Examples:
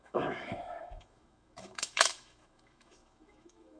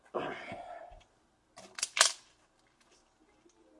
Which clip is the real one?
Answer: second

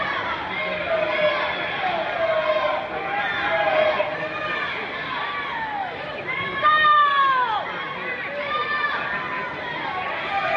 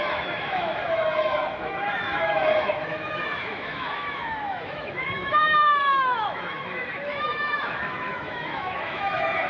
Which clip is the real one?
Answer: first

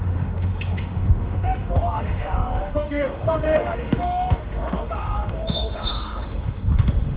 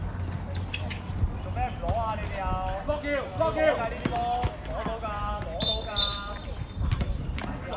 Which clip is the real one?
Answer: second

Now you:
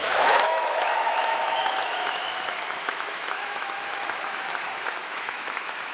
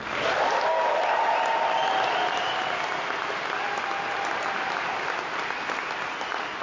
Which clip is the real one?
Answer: second